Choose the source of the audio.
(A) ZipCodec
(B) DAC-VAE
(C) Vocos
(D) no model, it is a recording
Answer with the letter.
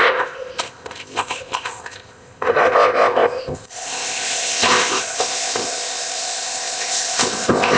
A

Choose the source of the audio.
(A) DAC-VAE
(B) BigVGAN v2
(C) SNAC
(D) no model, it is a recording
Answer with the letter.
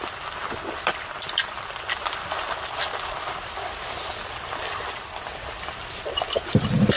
B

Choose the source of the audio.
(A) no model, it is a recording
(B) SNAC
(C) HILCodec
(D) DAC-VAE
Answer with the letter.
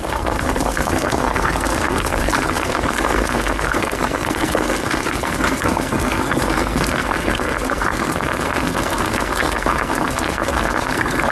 B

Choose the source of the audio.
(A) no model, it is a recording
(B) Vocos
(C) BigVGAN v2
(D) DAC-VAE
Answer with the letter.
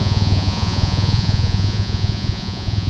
B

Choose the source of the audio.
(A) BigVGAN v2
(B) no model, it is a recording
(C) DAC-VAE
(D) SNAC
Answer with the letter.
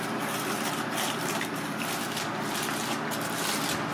B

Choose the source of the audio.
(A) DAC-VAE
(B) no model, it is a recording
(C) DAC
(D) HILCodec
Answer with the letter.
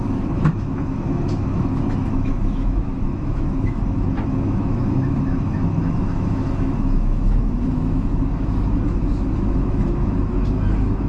A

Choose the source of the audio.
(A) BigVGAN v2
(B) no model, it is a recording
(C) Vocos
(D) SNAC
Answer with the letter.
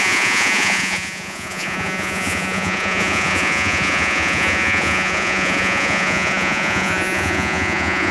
C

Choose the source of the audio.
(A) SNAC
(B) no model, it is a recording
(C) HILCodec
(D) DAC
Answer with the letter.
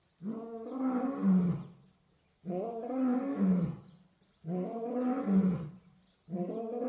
B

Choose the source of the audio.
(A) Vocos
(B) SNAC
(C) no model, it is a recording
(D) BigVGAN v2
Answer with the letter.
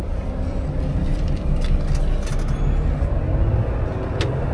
C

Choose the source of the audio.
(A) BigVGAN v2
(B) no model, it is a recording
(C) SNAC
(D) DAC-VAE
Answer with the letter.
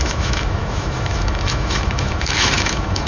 D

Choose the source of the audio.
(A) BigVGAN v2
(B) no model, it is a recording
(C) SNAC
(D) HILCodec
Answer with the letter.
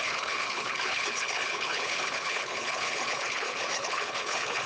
D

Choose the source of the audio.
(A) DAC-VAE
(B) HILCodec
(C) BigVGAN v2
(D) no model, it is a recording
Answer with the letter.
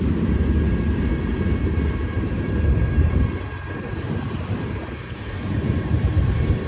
C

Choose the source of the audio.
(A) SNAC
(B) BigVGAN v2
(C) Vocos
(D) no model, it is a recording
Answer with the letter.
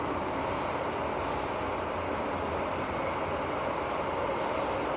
D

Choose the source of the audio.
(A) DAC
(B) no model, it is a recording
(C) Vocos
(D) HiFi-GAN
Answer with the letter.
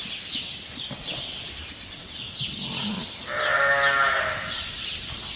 B